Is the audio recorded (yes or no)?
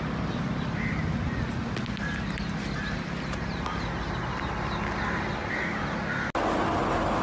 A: yes